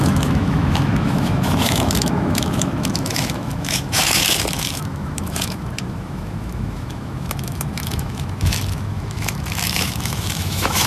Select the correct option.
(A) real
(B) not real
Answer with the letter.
B